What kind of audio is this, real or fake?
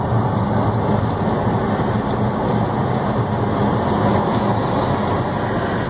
real